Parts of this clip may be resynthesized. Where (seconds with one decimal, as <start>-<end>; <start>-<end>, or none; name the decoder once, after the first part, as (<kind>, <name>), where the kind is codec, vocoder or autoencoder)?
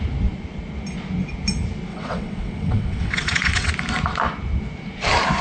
1.9-3.7 (vocoder, WaveNeXt)